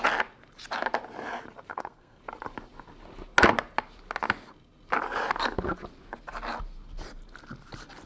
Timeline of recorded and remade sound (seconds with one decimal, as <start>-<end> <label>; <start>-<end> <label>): 0.0-1.7 recorded; 1.7-2.2 remade; 2.2-8.1 recorded